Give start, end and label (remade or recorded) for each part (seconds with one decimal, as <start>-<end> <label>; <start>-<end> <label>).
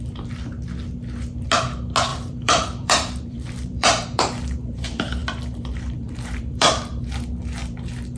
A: 0.0-2.1 recorded; 2.1-4.8 remade; 4.8-5.2 recorded; 5.2-7.1 remade; 7.1-8.2 recorded